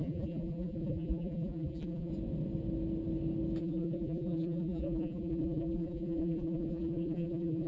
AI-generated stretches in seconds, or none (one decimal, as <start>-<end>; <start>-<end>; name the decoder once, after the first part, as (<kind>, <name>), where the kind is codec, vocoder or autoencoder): 0.0-2.1 (vocoder, BigVGAN v2); 3.6-7.7